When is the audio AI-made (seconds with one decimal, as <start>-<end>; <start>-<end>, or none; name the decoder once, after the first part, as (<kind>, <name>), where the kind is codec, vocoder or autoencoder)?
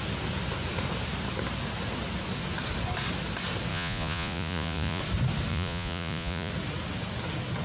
3.7-5.0 (vocoder, Vocos); 5.5-6.5